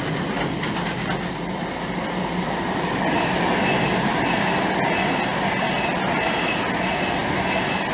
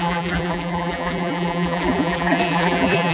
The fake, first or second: second